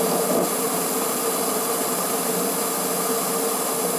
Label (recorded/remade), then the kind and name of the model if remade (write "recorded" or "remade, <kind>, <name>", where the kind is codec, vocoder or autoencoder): recorded